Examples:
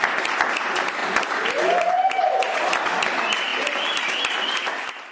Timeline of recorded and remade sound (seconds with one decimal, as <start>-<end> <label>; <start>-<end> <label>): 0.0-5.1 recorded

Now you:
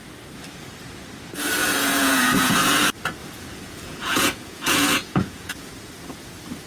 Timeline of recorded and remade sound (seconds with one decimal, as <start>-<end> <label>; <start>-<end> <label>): 0.0-1.6 recorded; 1.6-2.8 remade; 2.8-3.2 recorded; 3.2-5.7 remade; 5.7-6.7 recorded

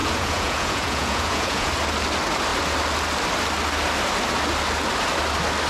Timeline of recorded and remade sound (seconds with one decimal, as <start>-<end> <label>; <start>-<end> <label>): 0.0-1.7 remade; 1.7-5.7 recorded

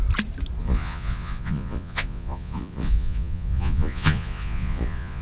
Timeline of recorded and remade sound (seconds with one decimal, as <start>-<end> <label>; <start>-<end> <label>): 0.0-0.6 recorded; 0.6-5.2 remade

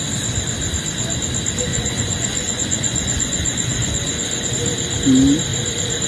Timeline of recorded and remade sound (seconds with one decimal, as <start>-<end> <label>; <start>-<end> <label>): 0.0-1.7 recorded; 1.7-4.5 remade; 4.5-6.1 recorded

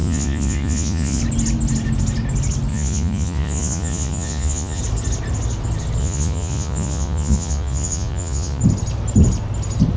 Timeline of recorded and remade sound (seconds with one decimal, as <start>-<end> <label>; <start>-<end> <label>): 0.0-1.2 remade; 1.2-2.7 recorded; 2.7-4.8 remade; 4.8-6.0 recorded; 6.0-8.6 remade; 8.6-10.0 recorded

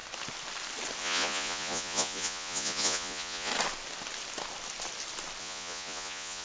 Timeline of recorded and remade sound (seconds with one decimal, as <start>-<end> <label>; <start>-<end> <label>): 0.0-1.0 recorded; 1.0-3.5 remade; 3.5-5.4 recorded; 5.4-6.4 remade

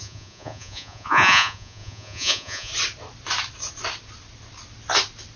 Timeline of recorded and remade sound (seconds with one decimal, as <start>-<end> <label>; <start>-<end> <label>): 0.0-2.7 remade; 2.7-5.4 recorded